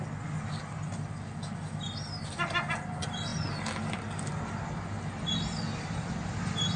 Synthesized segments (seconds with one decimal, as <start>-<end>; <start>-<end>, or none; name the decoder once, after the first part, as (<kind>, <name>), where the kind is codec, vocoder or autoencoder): none